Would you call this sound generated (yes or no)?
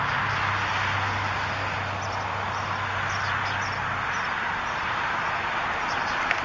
no